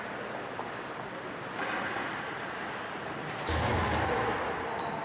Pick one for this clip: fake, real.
real